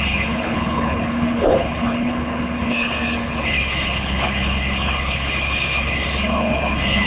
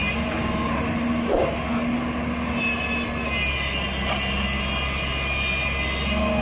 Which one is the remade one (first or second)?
first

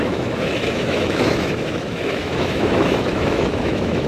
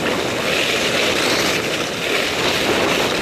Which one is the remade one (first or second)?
first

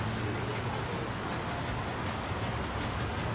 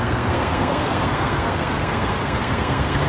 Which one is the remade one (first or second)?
second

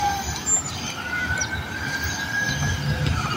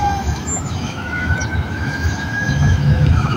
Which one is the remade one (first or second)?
second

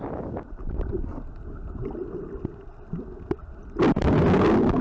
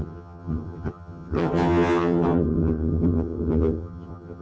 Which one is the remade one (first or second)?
second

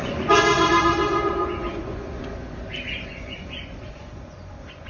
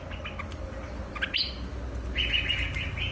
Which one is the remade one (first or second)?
first